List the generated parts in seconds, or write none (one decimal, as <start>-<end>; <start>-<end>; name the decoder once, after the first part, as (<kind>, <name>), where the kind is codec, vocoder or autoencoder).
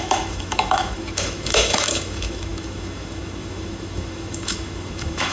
0.0-5.3 (autoencoder, DAC-VAE)